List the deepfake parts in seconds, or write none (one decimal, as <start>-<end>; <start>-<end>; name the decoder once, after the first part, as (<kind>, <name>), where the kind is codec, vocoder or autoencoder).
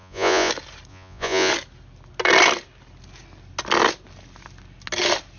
0.0-0.5 (vocoder, Vocos); 0.9-1.5